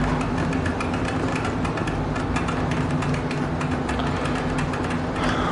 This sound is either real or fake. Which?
real